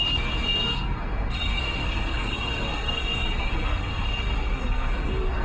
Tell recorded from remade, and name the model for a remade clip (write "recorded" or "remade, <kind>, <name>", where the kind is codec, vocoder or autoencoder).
remade, codec, SNAC